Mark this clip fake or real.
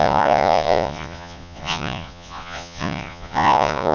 fake